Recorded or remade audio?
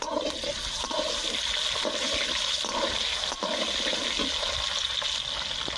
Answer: recorded